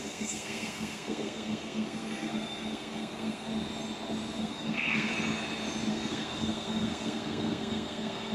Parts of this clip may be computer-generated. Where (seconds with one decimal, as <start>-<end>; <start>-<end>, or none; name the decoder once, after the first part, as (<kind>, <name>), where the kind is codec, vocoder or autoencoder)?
0.0-3.5 (codec, SNAC); 4.4-5.1; 5.9-8.3